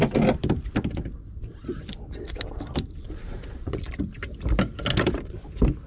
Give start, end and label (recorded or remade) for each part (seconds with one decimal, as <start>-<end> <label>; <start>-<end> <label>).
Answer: 0.0-3.0 recorded; 3.0-3.9 remade; 3.9-5.9 recorded